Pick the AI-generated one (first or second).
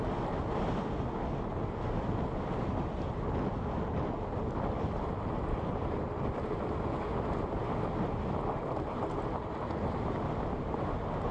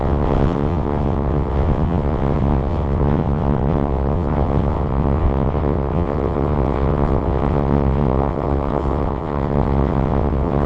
second